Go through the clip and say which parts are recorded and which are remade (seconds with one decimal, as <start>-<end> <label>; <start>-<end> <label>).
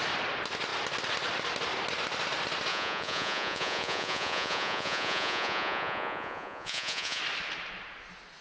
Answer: 0.0-2.7 recorded; 2.7-7.2 remade; 7.2-8.4 recorded